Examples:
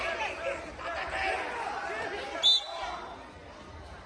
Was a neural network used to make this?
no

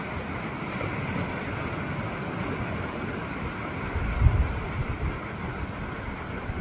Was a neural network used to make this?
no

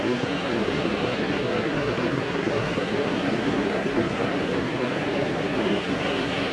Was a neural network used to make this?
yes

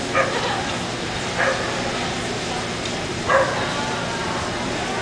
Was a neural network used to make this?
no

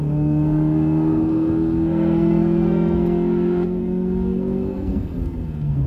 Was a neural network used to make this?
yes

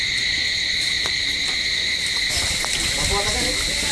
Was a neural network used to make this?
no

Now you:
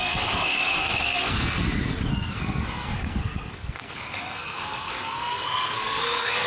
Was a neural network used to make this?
yes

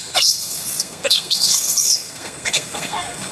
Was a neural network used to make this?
yes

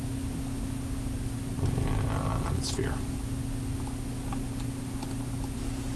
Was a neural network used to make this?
no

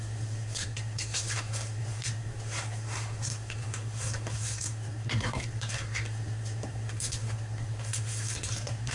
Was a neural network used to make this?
yes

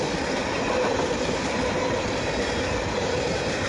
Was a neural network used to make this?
no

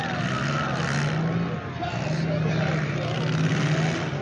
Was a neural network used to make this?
no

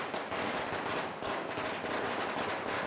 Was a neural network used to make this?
no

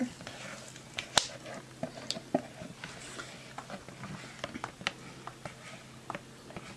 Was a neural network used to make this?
no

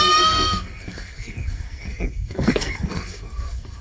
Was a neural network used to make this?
yes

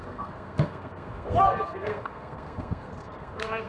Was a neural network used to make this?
yes